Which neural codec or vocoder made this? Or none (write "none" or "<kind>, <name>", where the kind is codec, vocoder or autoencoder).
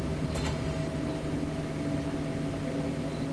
none